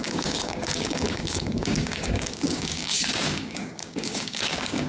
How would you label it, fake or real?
fake